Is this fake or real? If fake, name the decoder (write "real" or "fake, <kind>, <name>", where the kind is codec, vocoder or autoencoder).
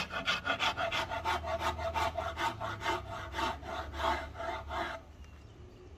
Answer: real